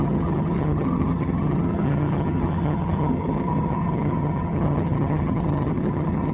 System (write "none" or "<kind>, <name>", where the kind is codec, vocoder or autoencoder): vocoder, HiFi-GAN